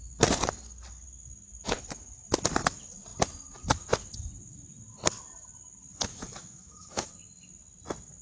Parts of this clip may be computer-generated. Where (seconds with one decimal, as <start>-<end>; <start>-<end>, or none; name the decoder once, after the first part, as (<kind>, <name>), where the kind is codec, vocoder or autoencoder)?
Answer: 6.1-7.1 (autoencoder, DAC-VAE)